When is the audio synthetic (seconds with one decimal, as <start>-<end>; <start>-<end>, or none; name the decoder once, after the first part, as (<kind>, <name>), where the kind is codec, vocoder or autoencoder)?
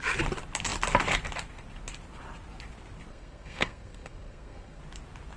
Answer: 3.1-4.8 (codec, SNAC)